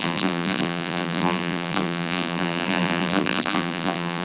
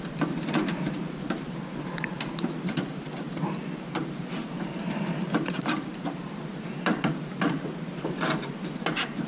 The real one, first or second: second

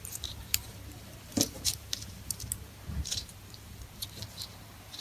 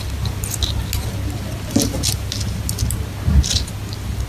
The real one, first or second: second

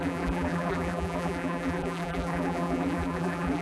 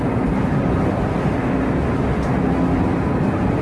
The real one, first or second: second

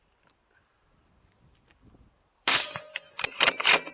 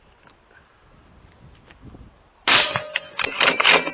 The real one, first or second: second